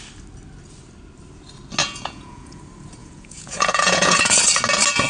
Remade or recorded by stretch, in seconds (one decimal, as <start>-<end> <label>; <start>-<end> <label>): 0.0-1.8 recorded; 1.8-2.6 remade; 2.6-3.0 recorded; 3.0-4.4 remade; 4.4-5.1 recorded